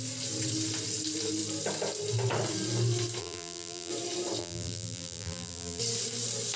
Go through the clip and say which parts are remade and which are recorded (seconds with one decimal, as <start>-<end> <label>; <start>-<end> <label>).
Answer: 0.0-3.2 recorded; 3.2-3.9 remade; 3.9-4.4 recorded; 4.4-5.8 remade; 5.8-6.6 recorded